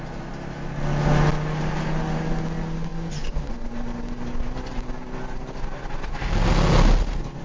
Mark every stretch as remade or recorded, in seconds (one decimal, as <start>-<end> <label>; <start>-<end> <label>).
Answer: 0.0-7.4 recorded